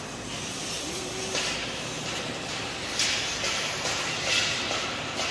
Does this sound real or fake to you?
real